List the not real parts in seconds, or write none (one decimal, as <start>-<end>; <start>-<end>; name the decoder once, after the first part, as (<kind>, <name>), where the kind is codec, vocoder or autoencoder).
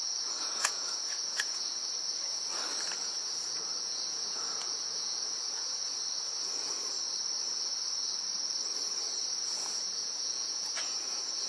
0.0-1.8 (vocoder, Vocos); 3.8-5.8; 9.4-11.5